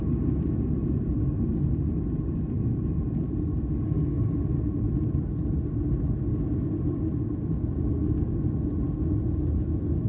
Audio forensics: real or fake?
real